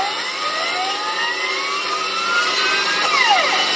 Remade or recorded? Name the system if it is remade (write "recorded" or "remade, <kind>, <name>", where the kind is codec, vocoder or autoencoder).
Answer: recorded